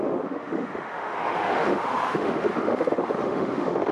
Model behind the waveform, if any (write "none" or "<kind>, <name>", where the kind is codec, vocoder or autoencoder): autoencoder, DAC-VAE